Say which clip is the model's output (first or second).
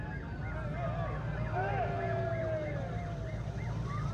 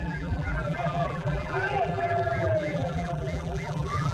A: second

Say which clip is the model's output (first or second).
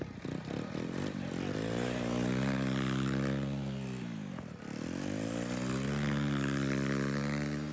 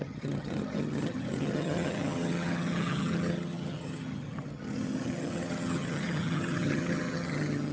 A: second